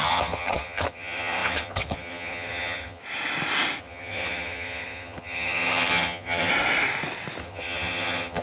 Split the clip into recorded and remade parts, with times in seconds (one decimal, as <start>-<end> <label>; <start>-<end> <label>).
0.0-3.0 remade; 3.0-3.8 recorded; 3.8-6.5 remade; 6.5-7.4 recorded; 7.4-8.4 remade